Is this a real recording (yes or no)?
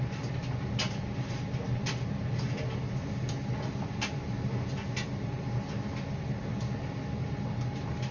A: yes